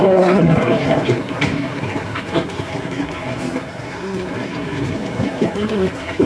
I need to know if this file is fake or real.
fake